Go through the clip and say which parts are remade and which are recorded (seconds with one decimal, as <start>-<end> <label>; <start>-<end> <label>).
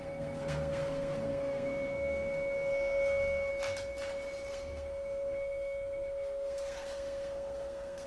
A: 0.0-3.5 remade; 3.5-4.5 recorded; 4.5-8.1 remade